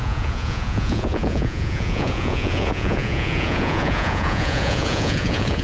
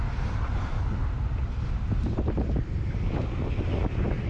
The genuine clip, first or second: second